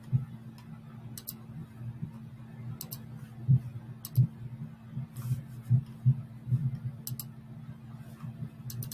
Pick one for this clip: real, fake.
real